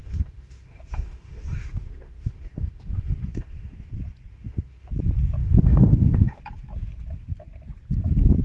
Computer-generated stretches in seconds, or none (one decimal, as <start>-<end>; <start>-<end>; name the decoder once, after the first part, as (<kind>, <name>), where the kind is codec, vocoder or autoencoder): 0.0-3.9 (autoencoder, DAC-VAE); 4.3-4.9; 5.4-6.4